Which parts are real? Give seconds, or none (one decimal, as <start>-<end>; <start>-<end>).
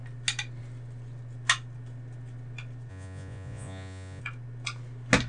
0.0-2.9; 4.2-5.3